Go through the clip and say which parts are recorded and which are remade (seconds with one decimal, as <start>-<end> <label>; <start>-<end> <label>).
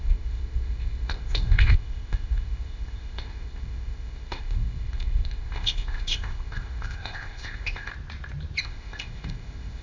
0.0-7.9 remade; 7.9-8.6 recorded; 8.6-9.8 remade